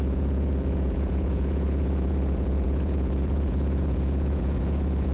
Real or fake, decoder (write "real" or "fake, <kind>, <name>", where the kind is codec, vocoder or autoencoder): fake, vocoder, Vocos